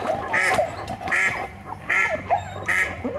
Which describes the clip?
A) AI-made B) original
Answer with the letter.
A